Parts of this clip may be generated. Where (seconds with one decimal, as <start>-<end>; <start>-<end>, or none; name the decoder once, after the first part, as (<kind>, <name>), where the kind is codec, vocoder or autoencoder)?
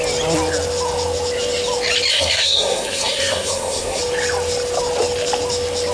2.1-4.0 (codec, SNAC)